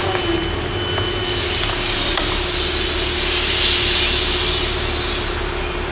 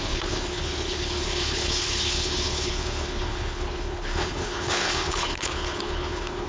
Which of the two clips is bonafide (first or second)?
first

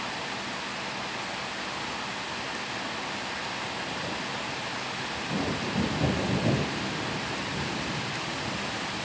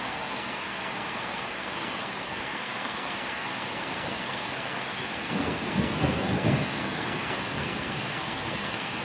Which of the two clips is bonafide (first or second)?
first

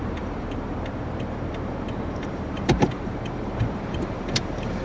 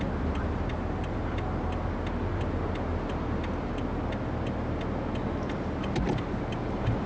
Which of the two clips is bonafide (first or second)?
second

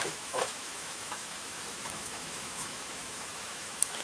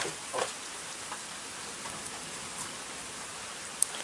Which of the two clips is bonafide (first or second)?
second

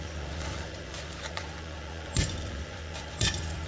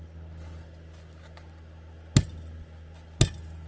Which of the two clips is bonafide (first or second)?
second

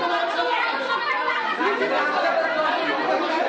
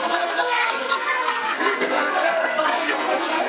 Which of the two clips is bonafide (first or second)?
first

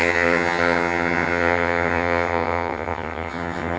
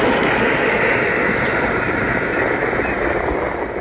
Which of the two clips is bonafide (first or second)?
second